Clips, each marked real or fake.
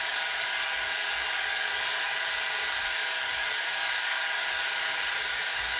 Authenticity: fake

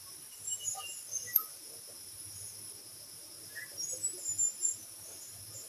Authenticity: fake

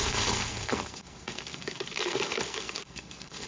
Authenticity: fake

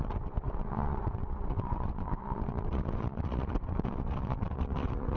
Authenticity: fake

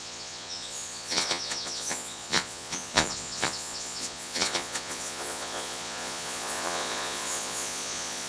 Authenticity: fake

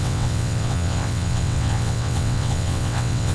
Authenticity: fake